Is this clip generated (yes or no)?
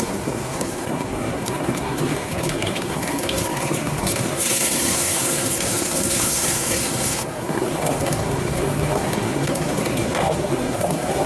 yes